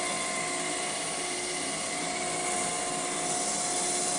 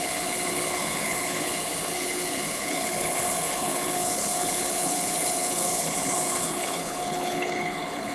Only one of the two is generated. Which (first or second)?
second